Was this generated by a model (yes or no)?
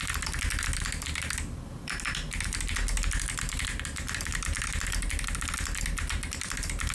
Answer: no